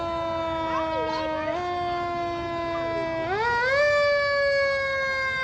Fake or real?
real